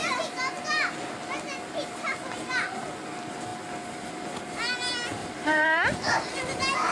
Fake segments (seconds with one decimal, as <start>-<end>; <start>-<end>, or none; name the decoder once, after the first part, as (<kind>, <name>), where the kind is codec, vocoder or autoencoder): 5.2-6.4 (vocoder, BigVGAN v2)